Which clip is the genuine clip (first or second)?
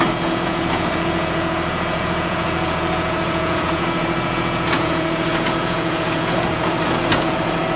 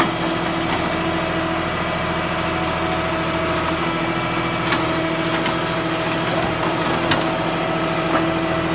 second